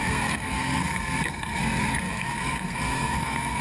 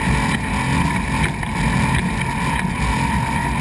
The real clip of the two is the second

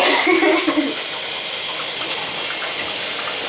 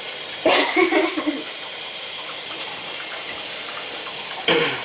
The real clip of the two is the first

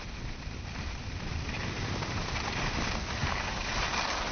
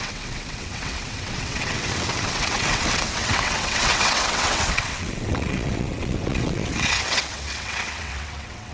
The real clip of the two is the first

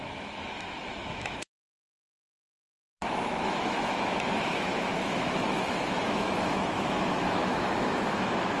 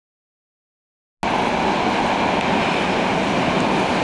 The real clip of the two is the second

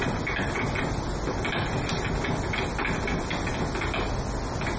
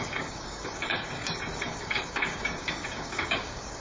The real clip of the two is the first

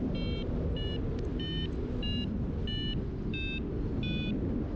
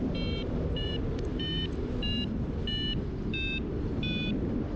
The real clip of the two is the first